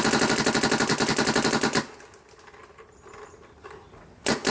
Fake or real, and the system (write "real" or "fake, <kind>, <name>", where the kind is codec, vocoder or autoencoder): real